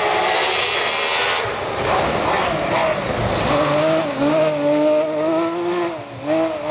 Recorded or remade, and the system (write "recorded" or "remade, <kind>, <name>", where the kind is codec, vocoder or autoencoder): recorded